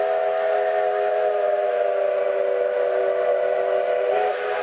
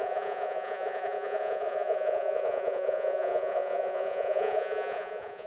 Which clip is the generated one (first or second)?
second